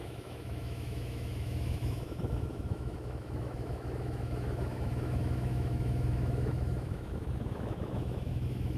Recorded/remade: remade